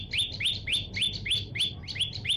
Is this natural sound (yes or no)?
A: yes